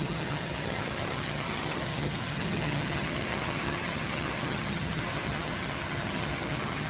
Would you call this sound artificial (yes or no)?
yes